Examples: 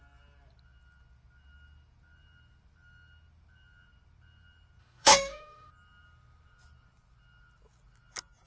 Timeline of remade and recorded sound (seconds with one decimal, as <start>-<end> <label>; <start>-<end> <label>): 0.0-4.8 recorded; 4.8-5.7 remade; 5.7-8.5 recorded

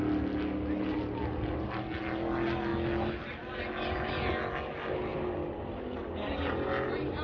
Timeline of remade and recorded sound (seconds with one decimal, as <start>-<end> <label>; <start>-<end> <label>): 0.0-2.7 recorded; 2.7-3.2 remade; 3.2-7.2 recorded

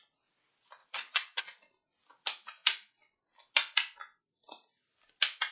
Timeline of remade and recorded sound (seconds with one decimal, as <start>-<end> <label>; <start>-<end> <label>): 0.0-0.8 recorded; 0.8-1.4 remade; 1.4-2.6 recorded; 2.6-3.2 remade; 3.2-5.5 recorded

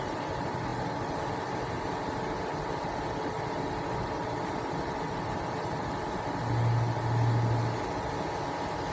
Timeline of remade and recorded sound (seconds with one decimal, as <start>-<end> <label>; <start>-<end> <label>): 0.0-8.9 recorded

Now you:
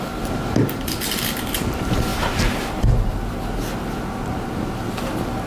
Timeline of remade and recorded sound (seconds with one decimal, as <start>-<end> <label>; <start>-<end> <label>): 0.0-2.1 recorded; 2.1-3.5 remade; 3.5-5.5 recorded

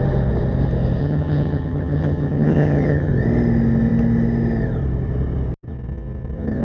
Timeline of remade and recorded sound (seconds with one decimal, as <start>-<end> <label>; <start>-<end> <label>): 0.0-1.0 recorded; 1.0-3.1 remade; 3.1-6.6 recorded